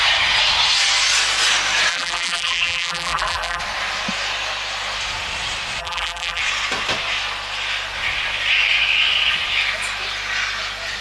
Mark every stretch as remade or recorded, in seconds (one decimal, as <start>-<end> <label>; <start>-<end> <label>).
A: 0.0-1.9 recorded; 1.9-3.6 remade; 3.6-5.8 recorded; 5.8-6.4 remade; 6.4-11.0 recorded